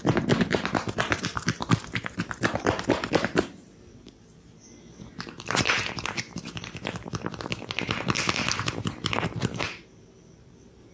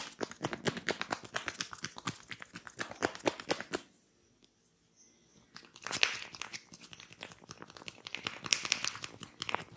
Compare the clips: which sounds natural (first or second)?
second